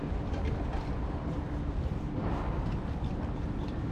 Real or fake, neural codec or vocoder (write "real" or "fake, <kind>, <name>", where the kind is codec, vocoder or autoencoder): real